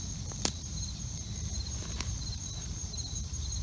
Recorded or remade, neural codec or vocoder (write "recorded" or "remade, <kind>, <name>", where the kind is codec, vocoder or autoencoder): remade, vocoder, BigVGAN v2